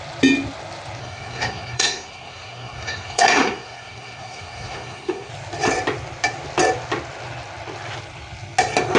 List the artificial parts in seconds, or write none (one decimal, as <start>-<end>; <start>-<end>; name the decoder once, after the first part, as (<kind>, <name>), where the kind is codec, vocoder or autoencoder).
1.0-5.3 (codec, SNAC)